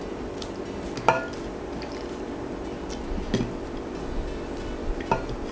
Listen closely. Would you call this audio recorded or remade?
recorded